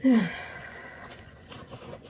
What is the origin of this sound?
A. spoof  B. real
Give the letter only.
A